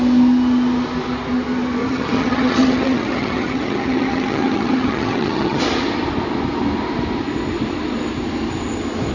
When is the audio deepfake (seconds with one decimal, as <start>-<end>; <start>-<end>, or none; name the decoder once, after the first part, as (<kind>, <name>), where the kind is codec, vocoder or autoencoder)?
1.8-5.6 (vocoder, HiFi-GAN)